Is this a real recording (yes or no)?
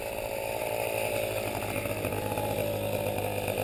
yes